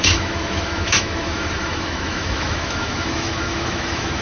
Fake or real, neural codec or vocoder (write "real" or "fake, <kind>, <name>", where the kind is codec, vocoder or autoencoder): fake, autoencoder, DAC-VAE